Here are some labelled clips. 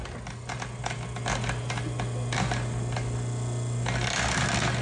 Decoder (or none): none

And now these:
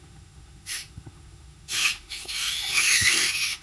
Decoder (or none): autoencoder, DAC-VAE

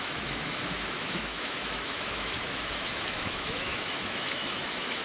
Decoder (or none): autoencoder, DAC-VAE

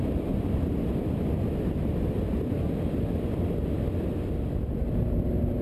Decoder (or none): none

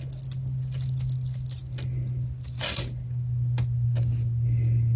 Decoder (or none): none